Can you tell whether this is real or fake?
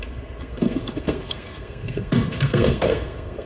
fake